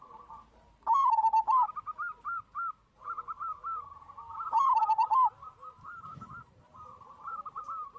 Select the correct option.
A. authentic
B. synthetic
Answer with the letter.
B